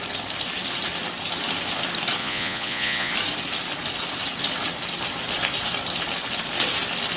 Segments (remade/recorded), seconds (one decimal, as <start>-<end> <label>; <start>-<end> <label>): 0.0-2.2 recorded; 2.2-3.1 remade; 3.1-7.2 recorded